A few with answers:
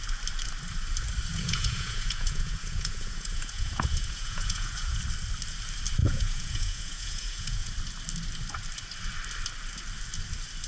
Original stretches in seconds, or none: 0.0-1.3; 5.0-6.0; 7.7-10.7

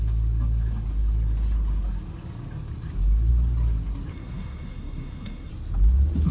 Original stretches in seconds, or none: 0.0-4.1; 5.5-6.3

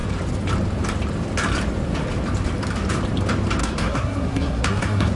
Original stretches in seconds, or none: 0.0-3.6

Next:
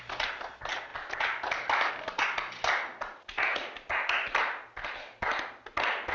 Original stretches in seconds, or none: 0.0-6.1

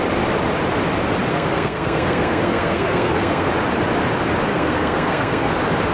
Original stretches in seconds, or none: 0.0-1.3; 3.5-4.5; 5.5-5.9

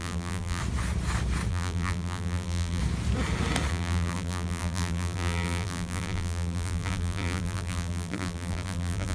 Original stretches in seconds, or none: 0.6-1.5; 2.8-3.7

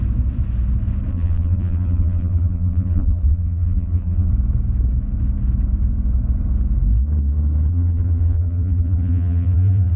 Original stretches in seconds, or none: 0.0-1.1; 4.3-7.7

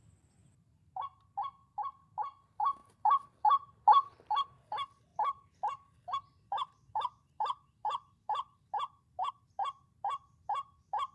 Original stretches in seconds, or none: 0.0-5.1; 9.3-11.1